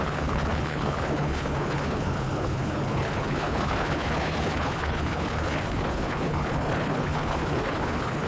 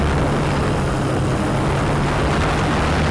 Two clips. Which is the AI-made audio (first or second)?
first